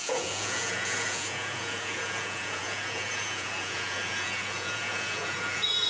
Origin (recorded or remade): remade